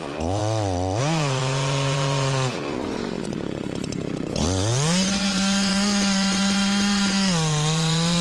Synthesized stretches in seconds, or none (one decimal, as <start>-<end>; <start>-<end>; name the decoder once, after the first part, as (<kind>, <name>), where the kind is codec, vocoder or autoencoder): 0.0-0.4 (vocoder, Vocos); 1.0-8.2